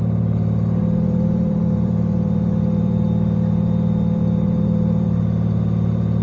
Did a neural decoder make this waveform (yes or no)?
yes